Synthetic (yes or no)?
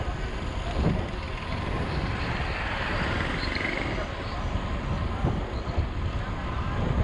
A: no